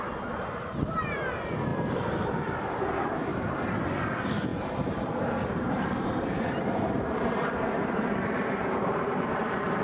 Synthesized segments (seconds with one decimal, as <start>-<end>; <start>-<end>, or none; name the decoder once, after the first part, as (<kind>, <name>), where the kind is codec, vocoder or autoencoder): 0.0-1.7 (vocoder, BigVGAN v2); 2.7-9.8